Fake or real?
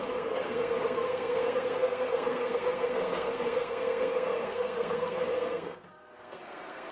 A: fake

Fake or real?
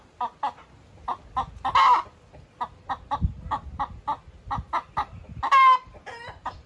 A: real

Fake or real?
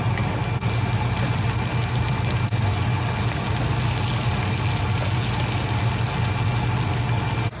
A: real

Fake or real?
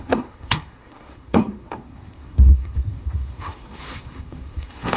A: fake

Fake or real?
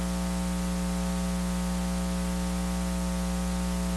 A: real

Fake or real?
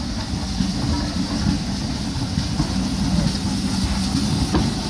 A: real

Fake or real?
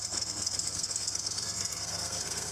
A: fake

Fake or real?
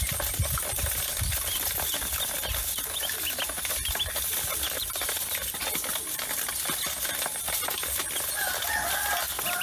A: real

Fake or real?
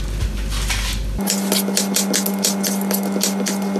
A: real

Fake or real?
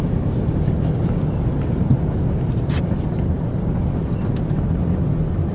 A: real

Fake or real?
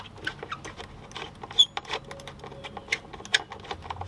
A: real